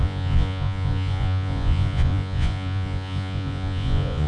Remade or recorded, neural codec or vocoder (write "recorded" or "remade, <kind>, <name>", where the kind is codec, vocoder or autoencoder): remade, vocoder, Vocos